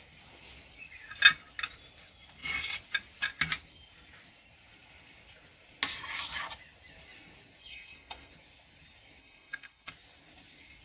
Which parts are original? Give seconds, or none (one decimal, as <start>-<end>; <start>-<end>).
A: 0.0-7.6; 8.3-9.2; 9.9-10.8